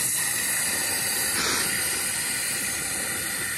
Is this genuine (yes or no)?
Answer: yes